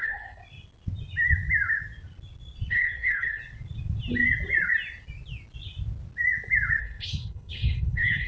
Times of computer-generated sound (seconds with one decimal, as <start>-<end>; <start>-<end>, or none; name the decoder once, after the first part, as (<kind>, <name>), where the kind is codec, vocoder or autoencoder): 0.0-0.4 (codec, HILCodec); 2.7-3.4; 6.8-8.3